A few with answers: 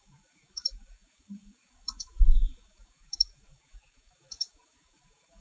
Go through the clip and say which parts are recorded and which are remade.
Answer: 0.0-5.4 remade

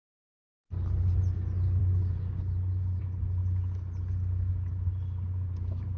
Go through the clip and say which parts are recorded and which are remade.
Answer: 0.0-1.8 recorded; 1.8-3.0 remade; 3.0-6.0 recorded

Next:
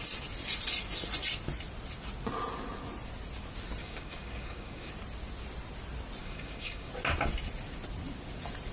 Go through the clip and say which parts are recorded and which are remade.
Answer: 0.0-3.8 recorded; 3.8-4.9 remade; 4.9-6.2 recorded; 6.2-6.9 remade; 6.9-8.7 recorded

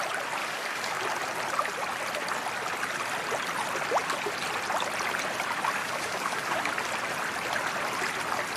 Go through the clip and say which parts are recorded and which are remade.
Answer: 0.0-0.4 recorded; 0.4-1.0 remade; 1.0-5.8 recorded; 5.8-6.7 remade; 6.7-8.6 recorded

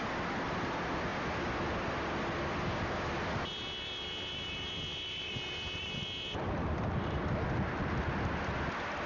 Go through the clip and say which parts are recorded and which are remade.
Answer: 0.0-9.1 recorded